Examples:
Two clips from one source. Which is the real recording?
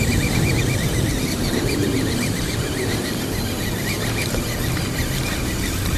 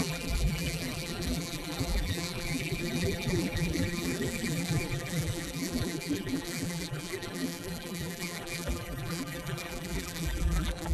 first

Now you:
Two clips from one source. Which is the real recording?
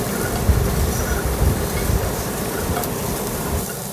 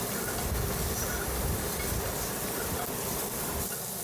second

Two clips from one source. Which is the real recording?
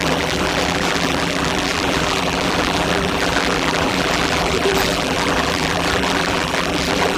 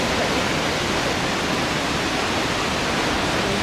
second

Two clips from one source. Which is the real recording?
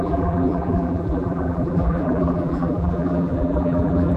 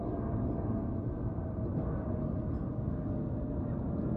second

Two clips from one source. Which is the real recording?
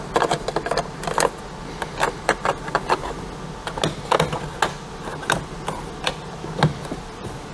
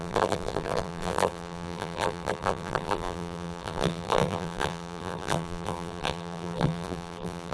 first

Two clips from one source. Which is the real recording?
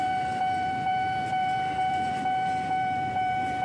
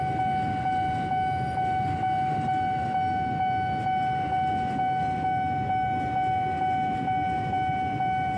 second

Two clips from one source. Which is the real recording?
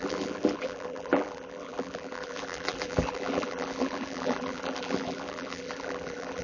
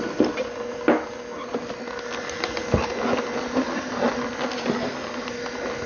second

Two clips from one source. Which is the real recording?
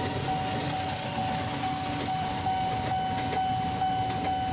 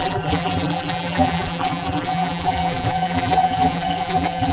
first